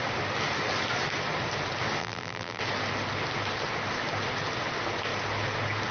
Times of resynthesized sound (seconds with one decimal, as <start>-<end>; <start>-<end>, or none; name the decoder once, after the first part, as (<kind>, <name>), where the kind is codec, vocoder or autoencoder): 2.0-2.6 (vocoder, BigVGAN v2)